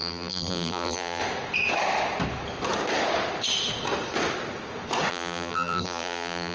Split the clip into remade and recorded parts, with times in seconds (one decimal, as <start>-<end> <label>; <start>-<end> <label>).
0.0-1.2 remade; 1.2-5.1 recorded; 5.1-6.5 remade